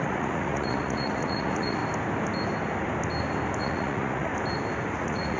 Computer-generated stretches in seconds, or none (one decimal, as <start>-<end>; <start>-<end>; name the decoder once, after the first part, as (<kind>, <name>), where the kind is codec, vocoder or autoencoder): 0.0-1.8 (vocoder, Vocos); 3.6-4.3; 5.0-5.4